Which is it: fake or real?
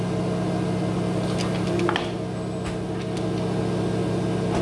real